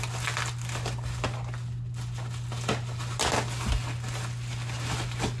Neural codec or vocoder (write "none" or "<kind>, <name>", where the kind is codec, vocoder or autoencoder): none